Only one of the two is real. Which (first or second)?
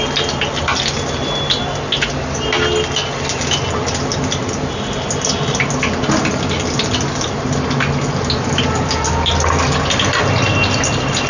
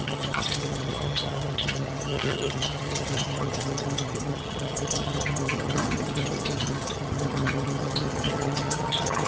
first